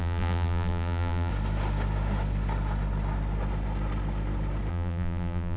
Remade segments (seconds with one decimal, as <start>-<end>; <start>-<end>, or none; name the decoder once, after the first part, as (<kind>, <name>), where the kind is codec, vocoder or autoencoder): 0.0-1.3 (vocoder, BigVGAN v2); 4.7-5.6